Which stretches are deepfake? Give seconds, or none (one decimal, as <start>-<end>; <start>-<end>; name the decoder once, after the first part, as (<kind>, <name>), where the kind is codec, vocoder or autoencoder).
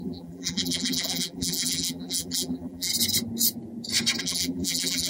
0.0-2.9 (vocoder, BigVGAN v2); 4.2-5.1